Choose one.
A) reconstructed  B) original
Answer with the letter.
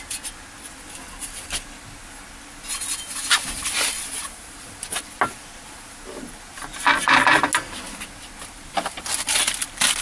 B